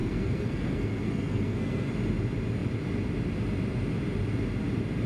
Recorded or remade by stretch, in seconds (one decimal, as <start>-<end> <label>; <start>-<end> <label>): 0.0-1.9 remade; 1.9-5.1 recorded